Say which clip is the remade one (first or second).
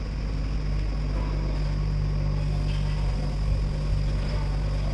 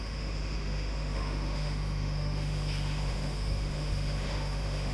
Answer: second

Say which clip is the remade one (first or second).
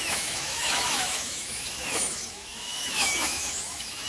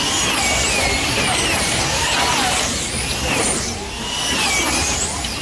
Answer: first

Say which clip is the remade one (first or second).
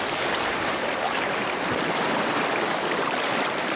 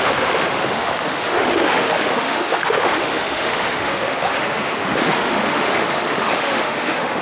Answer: second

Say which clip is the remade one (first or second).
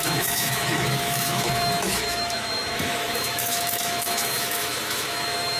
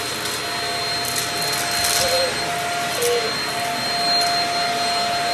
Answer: first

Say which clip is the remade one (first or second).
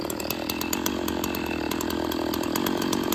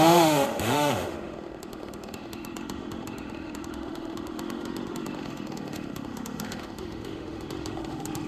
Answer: second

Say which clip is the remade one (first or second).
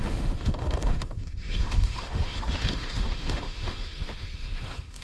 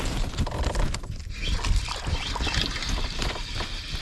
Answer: first